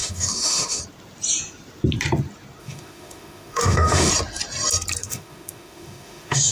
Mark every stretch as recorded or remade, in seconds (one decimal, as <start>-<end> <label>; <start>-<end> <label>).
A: 0.0-0.8 remade; 0.8-2.6 recorded; 2.6-4.1 remade; 4.1-5.0 recorded; 5.0-6.5 remade